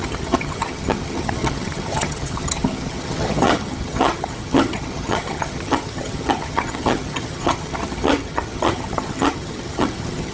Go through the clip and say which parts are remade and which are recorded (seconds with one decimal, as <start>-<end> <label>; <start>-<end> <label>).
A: 0.0-10.3 remade